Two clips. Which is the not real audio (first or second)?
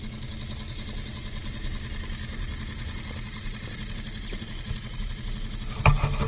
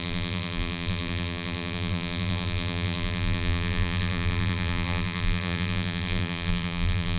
second